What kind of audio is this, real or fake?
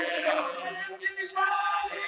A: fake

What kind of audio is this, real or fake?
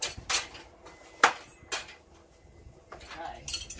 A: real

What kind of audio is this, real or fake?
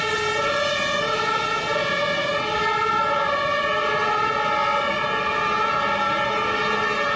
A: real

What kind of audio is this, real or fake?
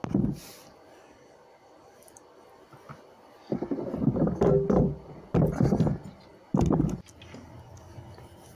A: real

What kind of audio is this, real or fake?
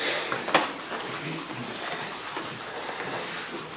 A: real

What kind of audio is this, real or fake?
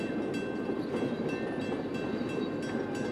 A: real